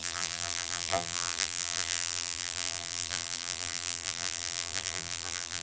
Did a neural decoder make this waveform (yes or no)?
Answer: yes